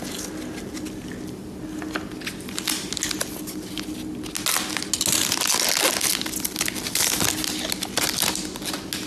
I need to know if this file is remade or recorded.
recorded